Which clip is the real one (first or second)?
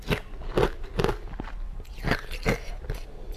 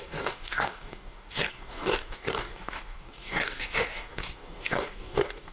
first